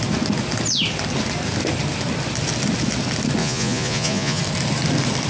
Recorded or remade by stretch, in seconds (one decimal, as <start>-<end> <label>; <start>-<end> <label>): 0.0-3.4 recorded; 3.4-4.4 remade; 4.4-5.3 recorded